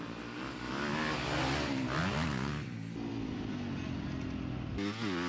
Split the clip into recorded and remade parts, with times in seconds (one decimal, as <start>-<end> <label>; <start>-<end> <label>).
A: 0.0-5.3 recorded